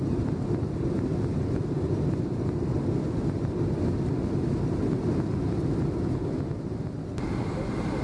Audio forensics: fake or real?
real